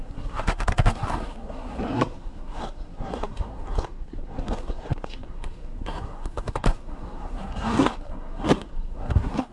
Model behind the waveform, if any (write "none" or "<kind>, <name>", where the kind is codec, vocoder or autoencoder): codec, SNAC